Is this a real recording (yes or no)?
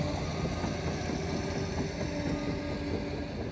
yes